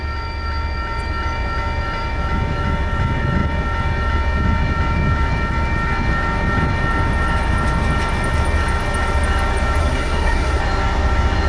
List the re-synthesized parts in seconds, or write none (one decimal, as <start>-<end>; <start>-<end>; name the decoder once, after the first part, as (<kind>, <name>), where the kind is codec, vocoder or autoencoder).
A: 9.8-10.6 (codec, SNAC)